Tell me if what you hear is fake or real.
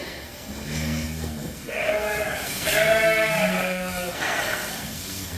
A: fake